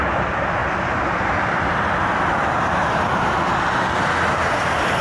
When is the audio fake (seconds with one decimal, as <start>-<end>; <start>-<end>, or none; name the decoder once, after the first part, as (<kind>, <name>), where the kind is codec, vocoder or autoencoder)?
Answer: none

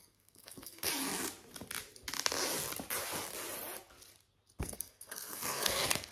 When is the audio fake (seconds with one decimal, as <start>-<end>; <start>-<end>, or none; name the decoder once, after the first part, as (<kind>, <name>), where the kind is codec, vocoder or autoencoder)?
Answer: 0.0-0.9 (codec, SNAC); 4.6-6.1

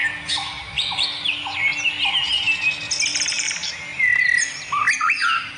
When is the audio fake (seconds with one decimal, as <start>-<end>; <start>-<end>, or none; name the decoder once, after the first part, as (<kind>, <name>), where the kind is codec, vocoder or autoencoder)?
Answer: 0.0-1.3 (vocoder, BigVGAN v2); 3.1-3.7

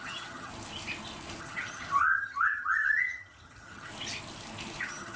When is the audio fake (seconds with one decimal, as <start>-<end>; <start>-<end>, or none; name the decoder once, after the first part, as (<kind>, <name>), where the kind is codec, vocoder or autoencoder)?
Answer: 0.0-0.5 (vocoder, HiFi-GAN); 1.4-3.9; 4.8-5.2

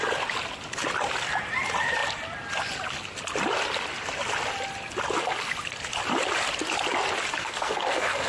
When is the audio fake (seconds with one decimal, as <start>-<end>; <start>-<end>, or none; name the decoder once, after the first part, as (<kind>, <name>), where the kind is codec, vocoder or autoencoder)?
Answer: 7.4-8.3 (codec, SNAC)

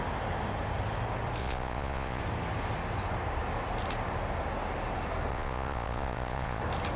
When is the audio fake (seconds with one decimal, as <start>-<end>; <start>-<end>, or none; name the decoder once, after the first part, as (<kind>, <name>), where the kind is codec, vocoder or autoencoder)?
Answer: 1.4-2.2 (vocoder, Vocos); 5.3-6.6

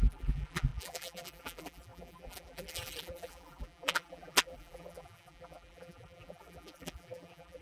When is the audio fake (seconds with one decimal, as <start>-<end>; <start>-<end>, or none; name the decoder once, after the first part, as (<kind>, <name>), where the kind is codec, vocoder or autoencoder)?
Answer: 0.0-7.6 (vocoder, BigVGAN v2)